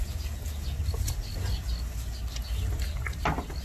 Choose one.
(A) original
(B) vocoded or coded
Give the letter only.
A